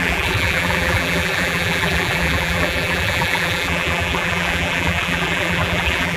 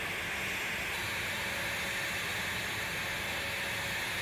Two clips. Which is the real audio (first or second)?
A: second